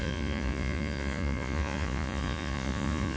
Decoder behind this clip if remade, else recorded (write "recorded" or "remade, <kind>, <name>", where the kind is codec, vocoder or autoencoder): remade, vocoder, Vocos